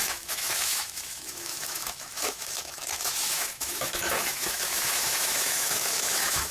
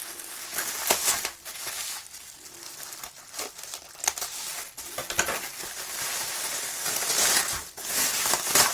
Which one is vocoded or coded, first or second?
first